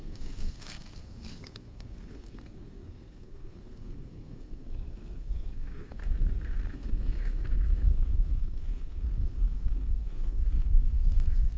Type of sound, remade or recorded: remade